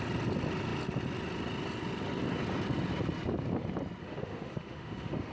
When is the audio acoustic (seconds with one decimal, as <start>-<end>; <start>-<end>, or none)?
0.0-4.0